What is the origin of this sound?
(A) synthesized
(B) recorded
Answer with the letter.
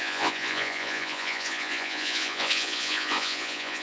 A